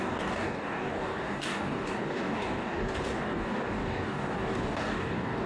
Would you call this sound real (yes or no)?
no